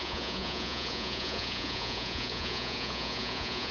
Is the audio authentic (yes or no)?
no